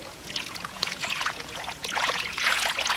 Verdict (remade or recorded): remade